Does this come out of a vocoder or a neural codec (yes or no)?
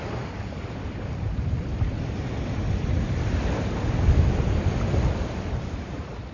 yes